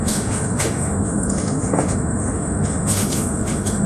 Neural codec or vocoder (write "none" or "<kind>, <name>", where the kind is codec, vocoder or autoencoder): autoencoder, DAC-VAE